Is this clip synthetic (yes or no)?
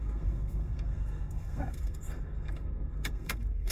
yes